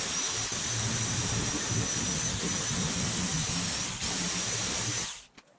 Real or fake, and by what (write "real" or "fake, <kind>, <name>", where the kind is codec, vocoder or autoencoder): real